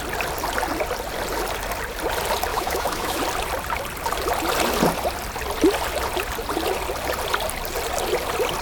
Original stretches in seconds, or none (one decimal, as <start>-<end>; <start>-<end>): 0.0-2.5; 3.2-8.6